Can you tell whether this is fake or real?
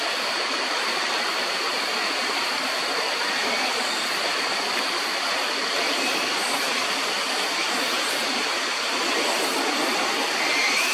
real